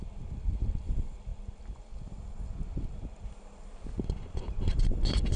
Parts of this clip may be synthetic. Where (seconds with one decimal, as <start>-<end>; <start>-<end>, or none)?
none